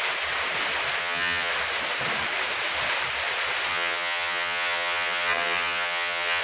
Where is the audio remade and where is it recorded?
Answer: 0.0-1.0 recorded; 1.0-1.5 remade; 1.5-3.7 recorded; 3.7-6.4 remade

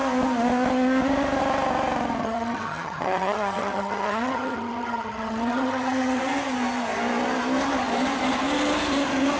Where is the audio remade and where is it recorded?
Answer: 0.0-2.2 recorded; 2.2-6.2 remade; 6.2-9.4 recorded

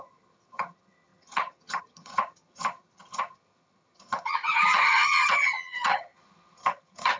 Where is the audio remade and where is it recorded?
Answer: 0.0-7.2 remade